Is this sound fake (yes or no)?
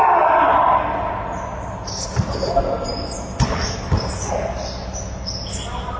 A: no